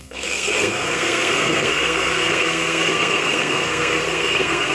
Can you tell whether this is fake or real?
fake